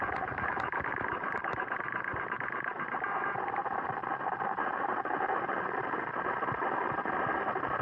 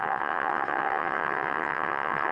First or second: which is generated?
second